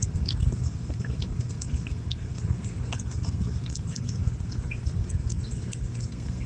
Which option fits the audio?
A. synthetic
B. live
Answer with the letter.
A